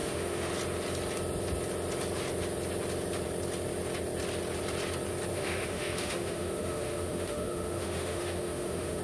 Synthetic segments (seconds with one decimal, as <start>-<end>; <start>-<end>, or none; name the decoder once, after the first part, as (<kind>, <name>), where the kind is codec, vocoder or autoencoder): 0.0-0.5 (autoencoder, DAC-VAE); 5.3-9.0